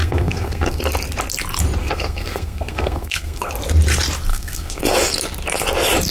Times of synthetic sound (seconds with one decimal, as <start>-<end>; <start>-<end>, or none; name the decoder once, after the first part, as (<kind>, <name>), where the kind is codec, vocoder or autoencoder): 0.0-0.8 (codec, SNAC); 1.8-3.5; 4.3-4.8